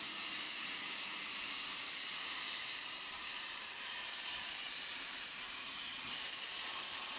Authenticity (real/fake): fake